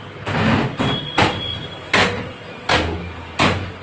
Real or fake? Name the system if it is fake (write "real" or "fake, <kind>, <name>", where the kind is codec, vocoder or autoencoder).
real